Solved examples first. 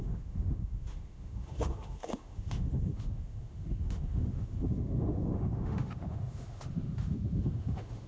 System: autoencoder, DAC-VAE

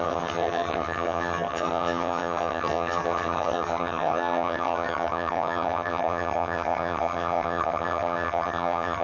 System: vocoder, HiFi-GAN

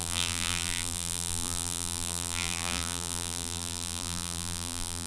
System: vocoder, BigVGAN v2